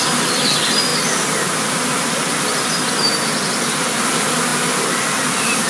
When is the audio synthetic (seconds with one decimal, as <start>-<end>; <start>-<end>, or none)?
none